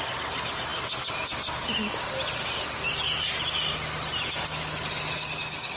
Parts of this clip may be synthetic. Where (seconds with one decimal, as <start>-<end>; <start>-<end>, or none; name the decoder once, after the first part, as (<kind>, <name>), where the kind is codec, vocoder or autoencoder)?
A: none